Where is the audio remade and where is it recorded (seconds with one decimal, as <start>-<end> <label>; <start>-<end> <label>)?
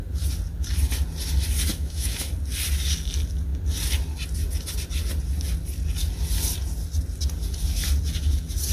0.0-1.7 recorded; 1.7-2.3 remade; 2.3-8.7 recorded